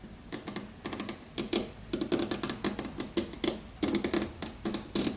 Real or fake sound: real